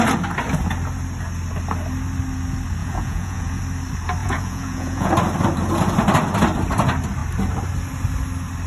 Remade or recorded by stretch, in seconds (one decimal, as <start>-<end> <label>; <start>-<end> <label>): 0.0-2.8 recorded; 2.8-3.6 remade; 3.6-4.2 recorded; 4.2-5.1 remade; 5.1-8.7 recorded

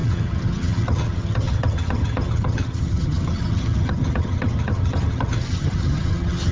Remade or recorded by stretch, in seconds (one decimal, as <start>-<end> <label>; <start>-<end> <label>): 0.0-6.5 remade

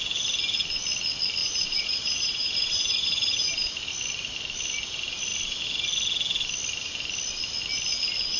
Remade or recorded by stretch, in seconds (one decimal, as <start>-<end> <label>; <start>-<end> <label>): 0.0-1.4 recorded; 1.4-3.9 remade; 3.9-8.4 recorded